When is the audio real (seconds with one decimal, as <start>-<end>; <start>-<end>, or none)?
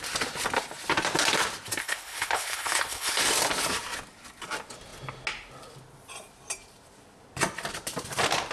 0.0-1.8; 3.2-8.5